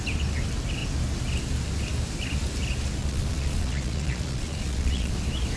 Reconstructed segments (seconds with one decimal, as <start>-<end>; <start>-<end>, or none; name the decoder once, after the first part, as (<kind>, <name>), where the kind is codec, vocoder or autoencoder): 3.0-5.1 (vocoder, Vocos)